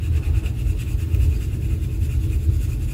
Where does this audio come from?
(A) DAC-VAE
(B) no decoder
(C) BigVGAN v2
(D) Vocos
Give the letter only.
B